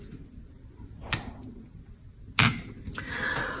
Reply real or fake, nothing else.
real